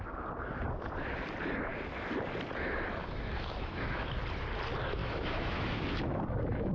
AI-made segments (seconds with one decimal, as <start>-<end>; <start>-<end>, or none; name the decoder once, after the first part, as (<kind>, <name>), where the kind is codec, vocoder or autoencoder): 3.0-4.2 (autoencoder, DAC-VAE); 5.0-6.7